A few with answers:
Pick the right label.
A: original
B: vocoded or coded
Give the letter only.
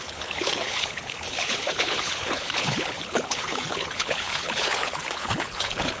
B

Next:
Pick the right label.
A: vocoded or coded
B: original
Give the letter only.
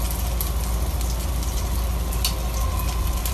B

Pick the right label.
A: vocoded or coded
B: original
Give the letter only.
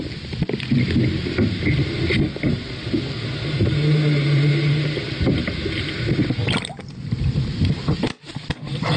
B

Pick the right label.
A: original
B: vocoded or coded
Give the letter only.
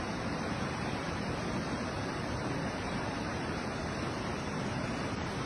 B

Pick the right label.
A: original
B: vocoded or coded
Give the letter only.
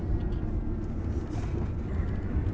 A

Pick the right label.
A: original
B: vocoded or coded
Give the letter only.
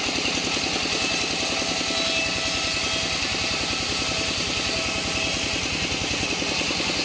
A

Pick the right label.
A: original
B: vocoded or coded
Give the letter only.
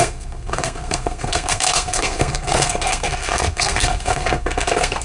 B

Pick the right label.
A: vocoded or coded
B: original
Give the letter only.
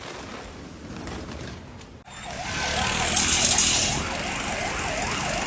B